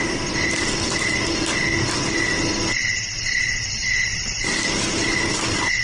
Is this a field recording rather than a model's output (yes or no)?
yes